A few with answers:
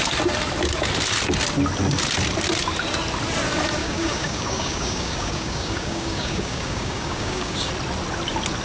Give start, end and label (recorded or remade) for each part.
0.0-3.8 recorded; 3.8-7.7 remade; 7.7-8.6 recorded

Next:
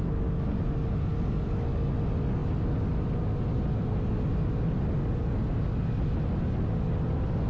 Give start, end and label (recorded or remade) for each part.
0.0-7.5 recorded

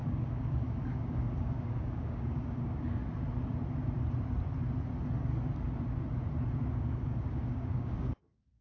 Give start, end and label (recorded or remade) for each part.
0.0-3.0 remade; 3.0-6.7 recorded; 6.7-8.6 remade

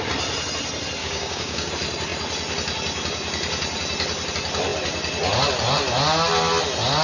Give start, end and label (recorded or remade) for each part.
0.0-1.0 recorded; 1.0-1.7 remade; 1.7-7.0 recorded

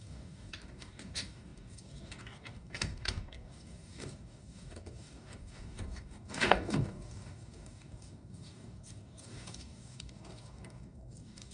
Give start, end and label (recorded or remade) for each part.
0.0-11.5 remade